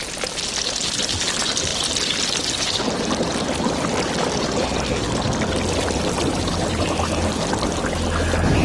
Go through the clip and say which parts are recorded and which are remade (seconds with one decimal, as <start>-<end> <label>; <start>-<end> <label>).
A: 0.0-8.6 recorded